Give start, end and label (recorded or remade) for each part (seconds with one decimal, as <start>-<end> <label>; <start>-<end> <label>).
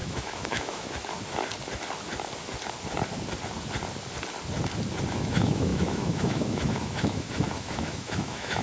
0.0-1.0 remade; 1.0-5.1 recorded; 5.1-8.6 remade